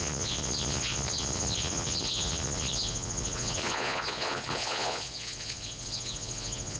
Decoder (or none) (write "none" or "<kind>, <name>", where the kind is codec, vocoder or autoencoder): vocoder, Vocos